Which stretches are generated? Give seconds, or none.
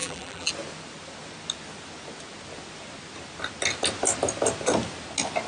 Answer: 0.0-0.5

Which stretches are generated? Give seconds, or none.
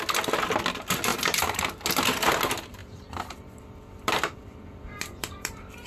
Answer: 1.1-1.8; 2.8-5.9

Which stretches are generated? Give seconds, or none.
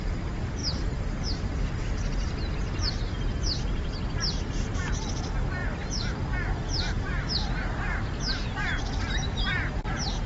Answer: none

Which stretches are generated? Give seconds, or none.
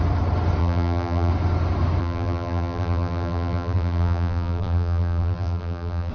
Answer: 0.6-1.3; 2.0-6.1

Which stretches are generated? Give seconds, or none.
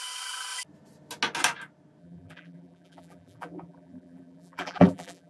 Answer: 2.0-5.3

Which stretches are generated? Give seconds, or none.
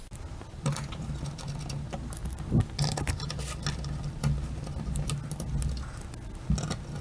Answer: none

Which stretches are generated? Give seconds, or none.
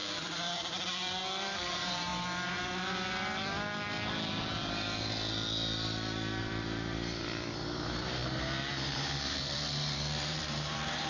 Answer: 0.0-2.1; 6.4-8.2; 8.7-11.1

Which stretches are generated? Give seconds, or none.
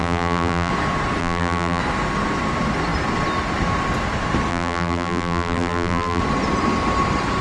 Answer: 0.0-0.7; 1.2-1.8; 4.5-6.2